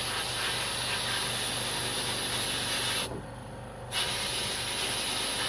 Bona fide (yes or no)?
yes